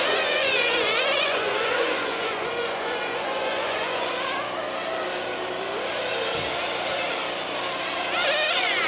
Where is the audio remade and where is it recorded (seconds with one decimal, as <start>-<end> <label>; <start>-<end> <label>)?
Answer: 0.0-4.1 remade; 4.1-8.5 recorded; 8.5-8.9 remade